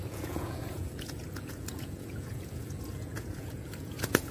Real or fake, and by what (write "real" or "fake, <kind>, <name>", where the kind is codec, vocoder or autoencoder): fake, vocoder, Vocos